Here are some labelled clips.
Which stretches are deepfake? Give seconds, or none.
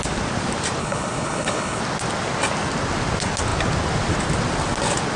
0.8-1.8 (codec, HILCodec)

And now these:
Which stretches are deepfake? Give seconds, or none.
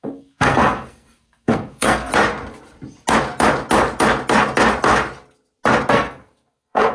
0.0-2.1 (codec, SNAC); 5.9-6.9